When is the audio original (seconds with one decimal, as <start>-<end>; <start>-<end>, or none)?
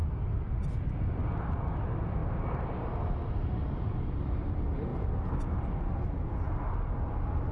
0.0-7.5